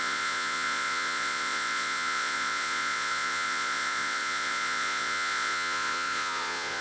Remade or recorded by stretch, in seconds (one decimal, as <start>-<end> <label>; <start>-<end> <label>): 0.0-6.8 remade